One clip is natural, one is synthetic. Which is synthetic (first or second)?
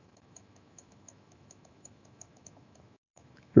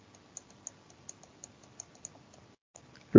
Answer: first